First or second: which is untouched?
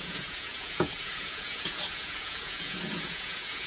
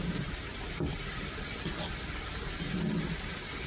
second